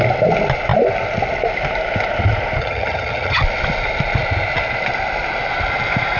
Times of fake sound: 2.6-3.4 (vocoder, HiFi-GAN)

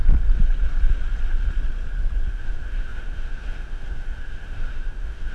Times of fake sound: 2.3-5.3 (autoencoder, DAC-VAE)